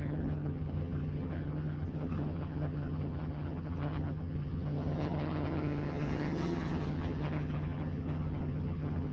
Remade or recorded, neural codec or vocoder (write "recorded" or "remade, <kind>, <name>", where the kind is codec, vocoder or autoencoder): remade, vocoder, HiFi-GAN